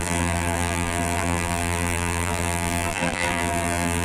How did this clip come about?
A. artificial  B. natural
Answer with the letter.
A